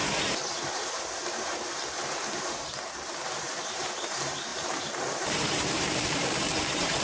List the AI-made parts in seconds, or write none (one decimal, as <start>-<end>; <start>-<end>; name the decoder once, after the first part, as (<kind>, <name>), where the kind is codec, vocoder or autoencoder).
0.0-7.0 (vocoder, BigVGAN v2)